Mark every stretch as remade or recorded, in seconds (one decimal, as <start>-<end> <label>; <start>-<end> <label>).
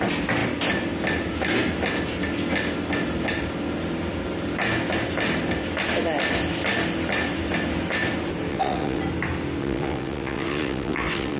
0.0-8.5 recorded; 8.5-9.0 remade; 9.0-9.6 recorded; 9.6-11.4 remade